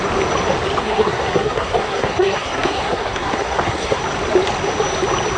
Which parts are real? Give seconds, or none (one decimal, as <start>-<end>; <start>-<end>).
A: 0.0-0.8; 4.0-5.4